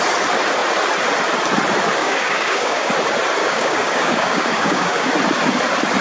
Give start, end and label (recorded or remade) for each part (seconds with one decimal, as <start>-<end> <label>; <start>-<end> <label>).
0.0-2.0 recorded; 2.0-2.9 remade; 2.9-3.4 recorded; 3.4-5.1 remade; 5.1-6.0 recorded